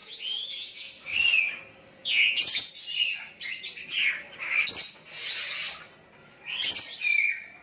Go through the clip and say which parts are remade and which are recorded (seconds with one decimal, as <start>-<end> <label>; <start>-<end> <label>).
0.0-0.9 remade; 0.9-2.0 recorded; 2.0-2.7 remade; 2.7-7.6 recorded